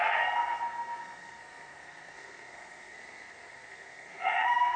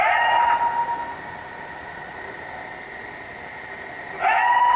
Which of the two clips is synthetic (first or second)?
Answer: first